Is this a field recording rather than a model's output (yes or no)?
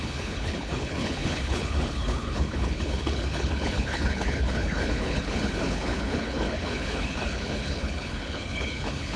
no